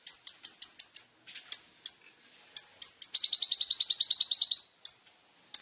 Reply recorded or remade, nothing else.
recorded